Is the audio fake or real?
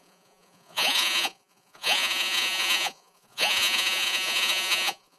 fake